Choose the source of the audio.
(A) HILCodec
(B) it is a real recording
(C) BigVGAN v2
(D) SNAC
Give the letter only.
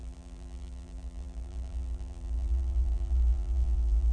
C